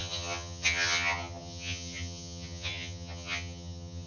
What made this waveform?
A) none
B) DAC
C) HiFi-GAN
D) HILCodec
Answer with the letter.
C